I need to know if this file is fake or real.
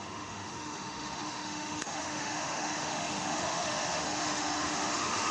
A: fake